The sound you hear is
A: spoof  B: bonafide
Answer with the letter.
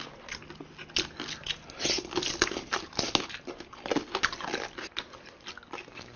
B